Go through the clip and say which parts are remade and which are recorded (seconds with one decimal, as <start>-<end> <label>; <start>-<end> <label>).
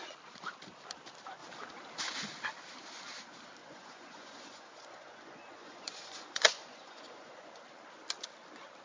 0.0-3.6 recorded; 3.6-7.6 remade; 7.6-8.8 recorded